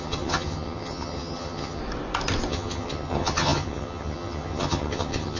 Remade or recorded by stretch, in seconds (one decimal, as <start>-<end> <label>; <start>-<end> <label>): 0.0-1.8 remade; 1.8-2.5 recorded; 2.5-5.4 remade